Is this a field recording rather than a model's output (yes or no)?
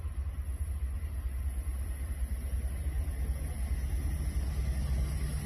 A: yes